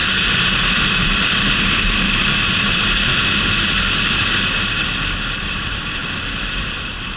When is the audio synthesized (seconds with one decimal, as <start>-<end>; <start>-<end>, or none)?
2.7-3.1; 5.4-6.0; 6.6-7.2